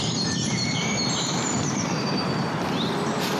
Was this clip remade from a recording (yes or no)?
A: yes